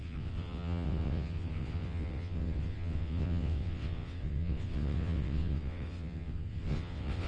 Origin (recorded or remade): remade